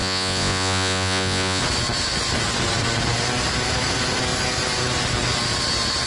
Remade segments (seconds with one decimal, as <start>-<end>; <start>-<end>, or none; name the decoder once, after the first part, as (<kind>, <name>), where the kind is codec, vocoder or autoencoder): 0.0-1.6 (vocoder, Vocos)